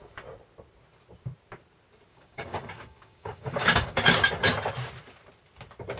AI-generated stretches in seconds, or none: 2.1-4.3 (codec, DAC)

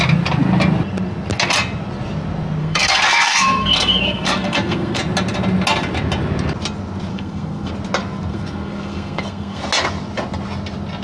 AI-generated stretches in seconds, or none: 2.6-5.0 (codec, SNAC); 7.1-7.7; 8.3-9.6